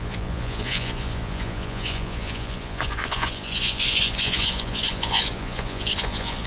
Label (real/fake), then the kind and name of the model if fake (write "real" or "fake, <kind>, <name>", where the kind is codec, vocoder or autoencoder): fake, vocoder, Vocos